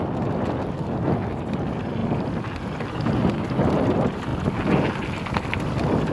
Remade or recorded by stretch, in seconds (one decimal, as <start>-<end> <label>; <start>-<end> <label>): 0.0-6.1 recorded

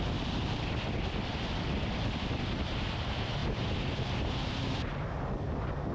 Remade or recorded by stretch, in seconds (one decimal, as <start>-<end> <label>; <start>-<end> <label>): 0.0-3.4 recorded; 3.4-4.6 remade; 4.6-5.9 recorded

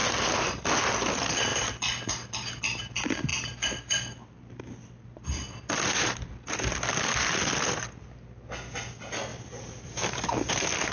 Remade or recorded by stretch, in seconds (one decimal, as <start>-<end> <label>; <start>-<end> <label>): 0.0-3.3 recorded; 3.3-4.6 remade; 4.6-10.9 recorded

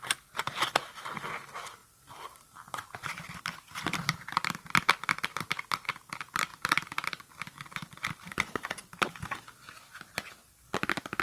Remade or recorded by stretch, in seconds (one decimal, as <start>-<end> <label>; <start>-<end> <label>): 0.0-1.8 recorded; 1.8-3.4 remade; 3.4-11.2 recorded

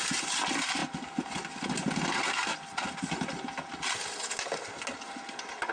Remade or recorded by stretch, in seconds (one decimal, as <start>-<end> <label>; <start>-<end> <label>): 0.0-5.7 recorded

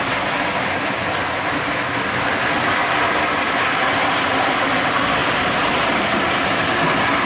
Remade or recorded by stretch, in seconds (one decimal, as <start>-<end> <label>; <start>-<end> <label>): 0.0-5.2 recorded; 5.2-6.8 remade; 6.8-7.3 recorded

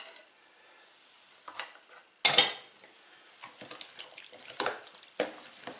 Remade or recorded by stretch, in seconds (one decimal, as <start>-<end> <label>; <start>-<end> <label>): 0.0-2.0 remade; 2.0-4.0 recorded; 4.0-5.8 remade